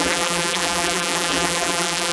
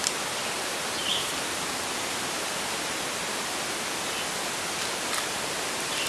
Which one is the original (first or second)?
second